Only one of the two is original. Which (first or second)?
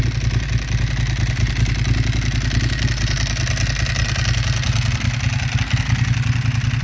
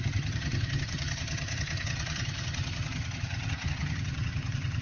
first